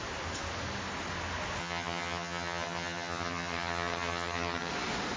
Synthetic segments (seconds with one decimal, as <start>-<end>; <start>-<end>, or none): 1.6-4.7